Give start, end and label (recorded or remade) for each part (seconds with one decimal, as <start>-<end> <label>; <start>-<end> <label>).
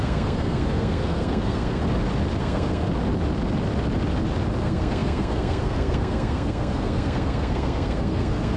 0.0-1.8 remade; 1.8-2.4 recorded; 2.4-2.9 remade; 2.9-4.6 recorded; 4.6-8.6 remade